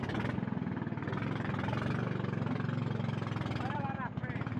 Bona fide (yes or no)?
yes